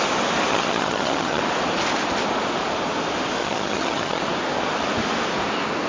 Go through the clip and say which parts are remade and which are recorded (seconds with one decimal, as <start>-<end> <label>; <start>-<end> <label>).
0.0-0.5 recorded; 0.5-1.4 remade; 1.4-3.4 recorded; 3.4-4.2 remade; 4.2-5.9 recorded